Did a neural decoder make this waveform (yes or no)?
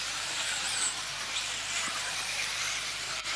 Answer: yes